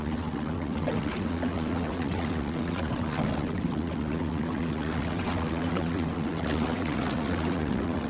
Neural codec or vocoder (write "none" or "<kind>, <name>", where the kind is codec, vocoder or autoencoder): vocoder, WaveNeXt